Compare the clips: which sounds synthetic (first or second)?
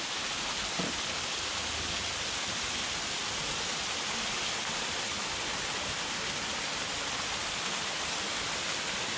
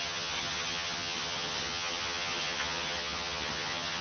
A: second